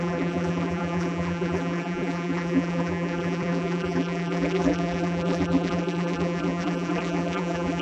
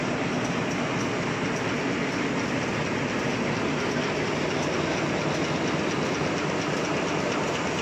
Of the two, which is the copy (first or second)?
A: first